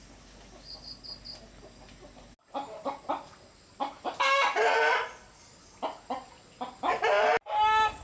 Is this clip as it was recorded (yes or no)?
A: yes